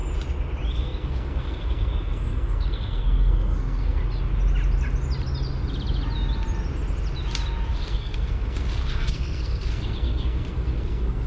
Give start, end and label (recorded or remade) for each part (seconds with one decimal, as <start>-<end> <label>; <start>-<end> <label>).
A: 0.0-0.7 recorded; 0.7-4.0 remade; 4.0-7.7 recorded; 7.7-11.3 remade